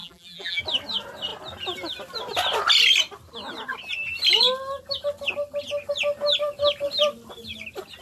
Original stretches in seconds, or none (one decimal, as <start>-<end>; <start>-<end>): 0.6-8.0